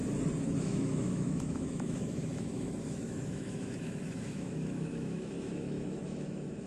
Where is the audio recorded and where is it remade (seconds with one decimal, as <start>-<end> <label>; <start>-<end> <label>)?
0.0-0.6 recorded; 0.6-6.7 remade